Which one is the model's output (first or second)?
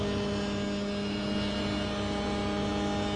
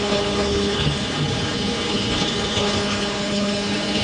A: second